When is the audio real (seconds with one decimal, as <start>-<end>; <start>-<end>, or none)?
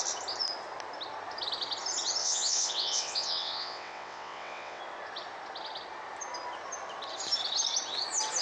0.0-2.2; 4.8-8.4